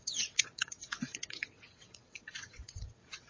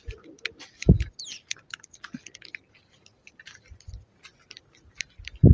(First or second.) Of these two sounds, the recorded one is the second